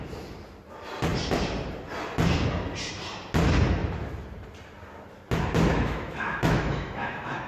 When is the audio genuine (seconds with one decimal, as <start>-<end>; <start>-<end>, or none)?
0.0-5.7